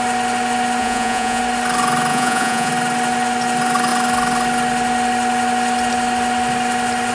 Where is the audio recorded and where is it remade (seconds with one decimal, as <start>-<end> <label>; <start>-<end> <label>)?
0.0-0.8 recorded; 0.8-1.4 remade; 1.4-2.1 recorded; 2.1-2.7 remade; 2.7-7.1 recorded